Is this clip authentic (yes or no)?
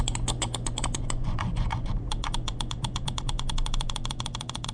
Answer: no